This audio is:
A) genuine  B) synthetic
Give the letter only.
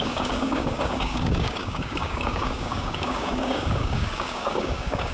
B